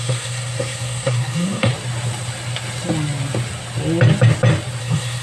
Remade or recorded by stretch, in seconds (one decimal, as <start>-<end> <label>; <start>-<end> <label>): 0.0-1.7 remade; 1.7-4.8 recorded; 4.8-5.2 remade